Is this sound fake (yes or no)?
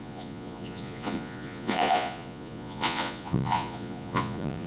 yes